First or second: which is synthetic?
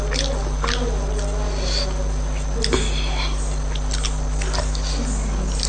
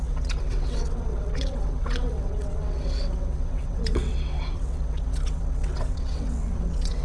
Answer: second